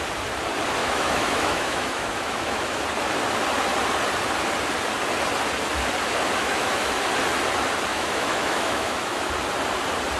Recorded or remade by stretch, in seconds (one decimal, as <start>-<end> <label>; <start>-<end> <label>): 0.0-0.8 recorded; 0.8-2.8 remade; 2.8-6.4 recorded; 6.4-7.1 remade; 7.1-7.9 recorded; 7.9-9.3 remade; 9.3-10.2 recorded